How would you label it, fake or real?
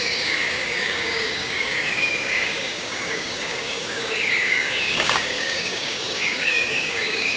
fake